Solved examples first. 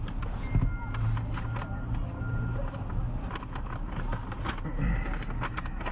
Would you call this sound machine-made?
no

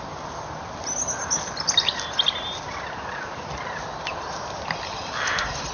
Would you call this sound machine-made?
no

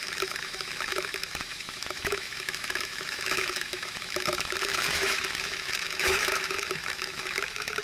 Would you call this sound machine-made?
yes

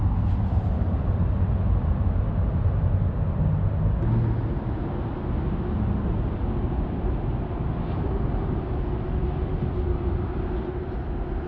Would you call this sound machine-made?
no